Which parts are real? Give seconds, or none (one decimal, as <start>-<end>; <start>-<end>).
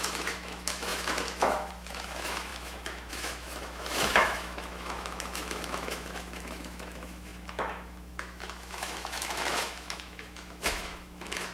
none